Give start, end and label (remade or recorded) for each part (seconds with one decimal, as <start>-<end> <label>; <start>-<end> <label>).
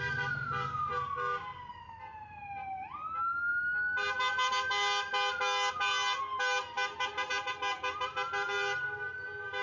0.0-0.9 recorded; 0.9-1.7 remade; 1.7-9.6 recorded